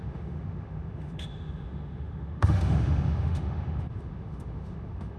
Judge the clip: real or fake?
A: fake